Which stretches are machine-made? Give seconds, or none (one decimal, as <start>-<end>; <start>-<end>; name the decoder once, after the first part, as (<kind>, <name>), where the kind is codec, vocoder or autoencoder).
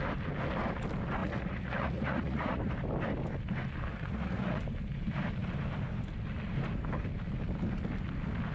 1.2-2.6 (vocoder, Vocos); 3.9-4.6